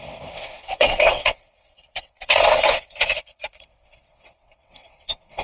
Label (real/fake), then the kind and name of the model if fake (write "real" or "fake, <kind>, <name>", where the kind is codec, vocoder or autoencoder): fake, vocoder, WaveNeXt